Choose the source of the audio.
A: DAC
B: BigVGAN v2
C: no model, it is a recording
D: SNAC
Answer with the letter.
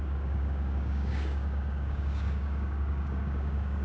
A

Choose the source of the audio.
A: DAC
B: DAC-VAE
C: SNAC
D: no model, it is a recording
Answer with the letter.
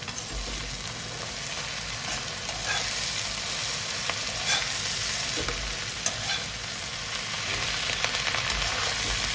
D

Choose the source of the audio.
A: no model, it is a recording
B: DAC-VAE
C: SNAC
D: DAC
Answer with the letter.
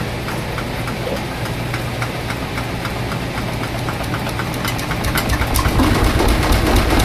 A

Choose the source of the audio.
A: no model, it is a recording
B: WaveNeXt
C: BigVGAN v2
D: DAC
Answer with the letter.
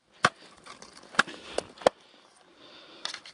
A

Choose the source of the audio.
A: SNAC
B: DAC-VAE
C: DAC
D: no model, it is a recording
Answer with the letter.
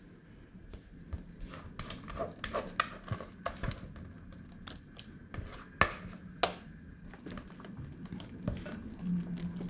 D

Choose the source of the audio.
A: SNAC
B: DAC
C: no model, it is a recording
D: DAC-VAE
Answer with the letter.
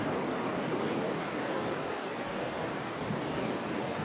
B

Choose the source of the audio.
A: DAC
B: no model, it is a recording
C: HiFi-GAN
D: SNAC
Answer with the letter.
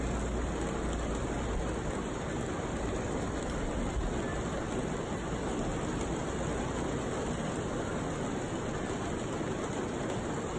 B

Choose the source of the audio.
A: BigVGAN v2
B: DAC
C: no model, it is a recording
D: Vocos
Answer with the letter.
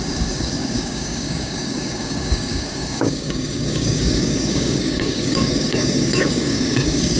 B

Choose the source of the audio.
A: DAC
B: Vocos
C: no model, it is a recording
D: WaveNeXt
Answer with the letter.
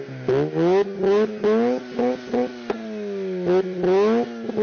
C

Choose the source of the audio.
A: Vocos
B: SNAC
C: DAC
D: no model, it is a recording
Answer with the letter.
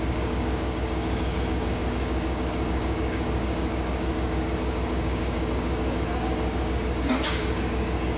C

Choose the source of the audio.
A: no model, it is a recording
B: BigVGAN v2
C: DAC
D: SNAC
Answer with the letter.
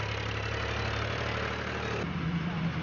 A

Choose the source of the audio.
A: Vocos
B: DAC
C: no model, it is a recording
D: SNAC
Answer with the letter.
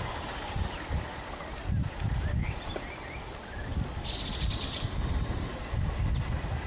C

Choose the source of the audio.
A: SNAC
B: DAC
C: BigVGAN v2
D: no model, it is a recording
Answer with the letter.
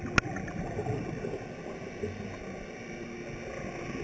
D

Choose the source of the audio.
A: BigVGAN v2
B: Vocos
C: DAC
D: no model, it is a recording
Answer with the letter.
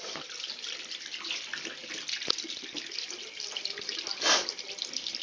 D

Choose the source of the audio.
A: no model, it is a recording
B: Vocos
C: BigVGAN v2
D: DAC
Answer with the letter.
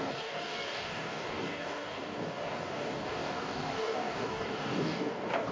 D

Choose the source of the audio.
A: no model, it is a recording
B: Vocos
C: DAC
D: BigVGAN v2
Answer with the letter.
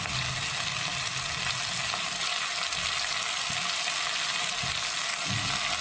A